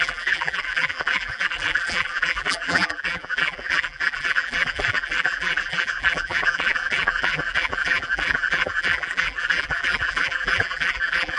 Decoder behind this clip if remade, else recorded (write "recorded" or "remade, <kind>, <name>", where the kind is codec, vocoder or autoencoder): remade, vocoder, BigVGAN v2